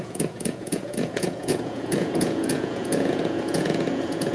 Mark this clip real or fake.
fake